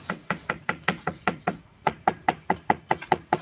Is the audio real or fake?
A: fake